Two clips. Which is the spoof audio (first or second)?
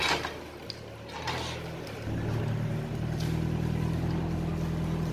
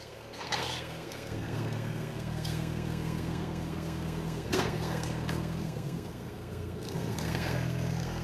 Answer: second